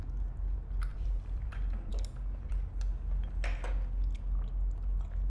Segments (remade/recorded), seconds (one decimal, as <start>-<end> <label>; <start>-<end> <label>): 0.0-0.9 recorded; 0.9-1.5 remade; 1.5-5.3 recorded